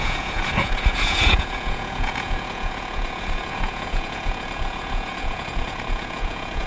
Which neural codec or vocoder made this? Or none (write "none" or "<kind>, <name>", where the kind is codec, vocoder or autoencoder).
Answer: vocoder, Vocos